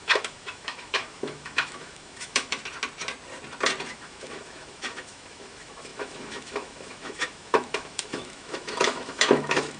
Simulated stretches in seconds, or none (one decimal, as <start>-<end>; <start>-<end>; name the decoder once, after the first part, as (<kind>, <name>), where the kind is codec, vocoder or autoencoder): 0.0-2.6 (autoencoder, DAC-VAE); 3.9-9.8

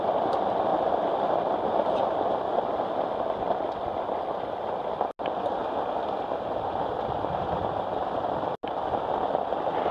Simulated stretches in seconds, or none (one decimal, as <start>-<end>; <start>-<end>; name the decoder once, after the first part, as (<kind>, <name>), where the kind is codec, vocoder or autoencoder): 0.7-4.3 (vocoder, BigVGAN v2); 5.6-7.5